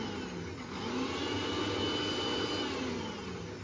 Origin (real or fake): real